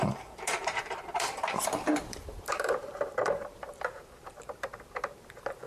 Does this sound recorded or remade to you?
remade